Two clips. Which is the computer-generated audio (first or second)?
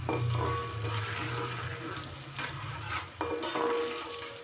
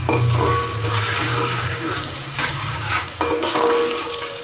second